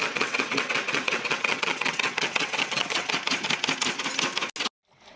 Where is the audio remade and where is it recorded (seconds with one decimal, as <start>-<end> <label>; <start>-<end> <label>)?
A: 0.0-3.1 remade; 3.1-5.2 recorded